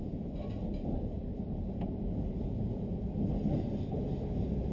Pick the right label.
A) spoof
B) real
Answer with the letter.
B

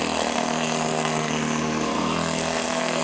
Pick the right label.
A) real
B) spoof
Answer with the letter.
B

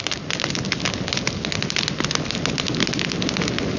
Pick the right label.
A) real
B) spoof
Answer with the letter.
A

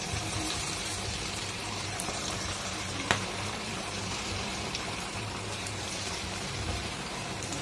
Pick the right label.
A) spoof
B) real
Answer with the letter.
A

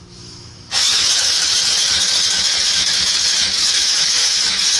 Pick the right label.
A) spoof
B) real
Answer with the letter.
A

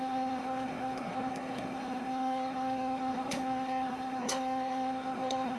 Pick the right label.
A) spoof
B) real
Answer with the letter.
A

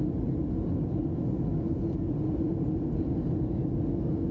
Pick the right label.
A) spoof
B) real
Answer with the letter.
B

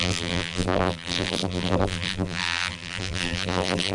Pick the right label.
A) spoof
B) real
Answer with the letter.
A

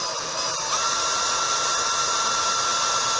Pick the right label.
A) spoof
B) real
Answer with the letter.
B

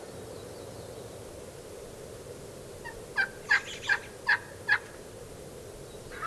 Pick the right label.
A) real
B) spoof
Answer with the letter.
A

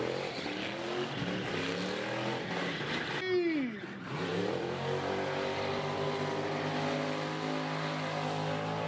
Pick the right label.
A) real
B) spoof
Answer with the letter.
A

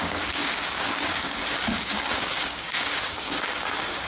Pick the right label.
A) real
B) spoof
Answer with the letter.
B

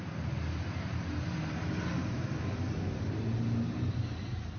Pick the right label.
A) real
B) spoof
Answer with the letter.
A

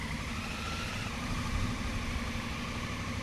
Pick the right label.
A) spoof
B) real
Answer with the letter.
A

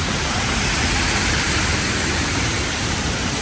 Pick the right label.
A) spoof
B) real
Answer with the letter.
A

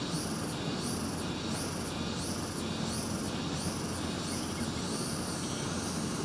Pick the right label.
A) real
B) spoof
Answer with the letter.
A